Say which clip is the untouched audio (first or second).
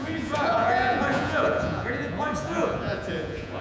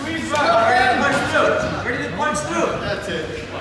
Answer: second